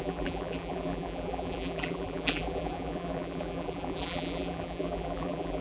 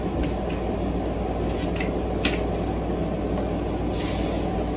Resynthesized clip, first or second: first